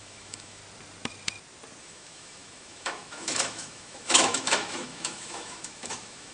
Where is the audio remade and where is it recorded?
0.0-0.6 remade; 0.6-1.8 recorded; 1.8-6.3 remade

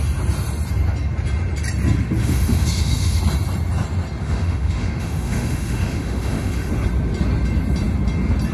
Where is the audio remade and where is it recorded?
0.0-2.2 recorded; 2.2-3.2 remade; 3.2-4.2 recorded; 4.2-6.7 remade; 6.7-8.5 recorded

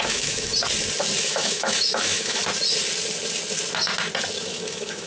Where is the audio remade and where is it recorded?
0.0-0.5 remade; 0.5-1.2 recorded; 1.2-2.4 remade; 2.4-4.4 recorded; 4.4-5.1 remade